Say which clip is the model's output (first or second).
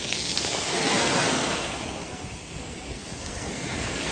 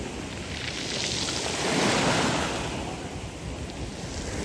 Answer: first